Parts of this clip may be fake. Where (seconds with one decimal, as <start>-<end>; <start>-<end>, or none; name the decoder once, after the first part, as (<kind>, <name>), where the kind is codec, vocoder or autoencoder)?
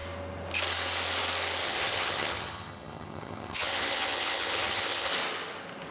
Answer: 1.6-5.1 (vocoder, HiFi-GAN)